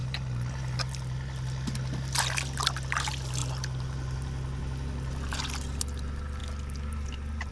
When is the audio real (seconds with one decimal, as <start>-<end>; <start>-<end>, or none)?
0.0-7.5